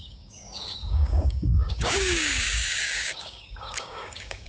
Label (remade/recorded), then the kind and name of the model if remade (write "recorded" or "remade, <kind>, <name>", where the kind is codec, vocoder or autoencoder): remade, codec, DAC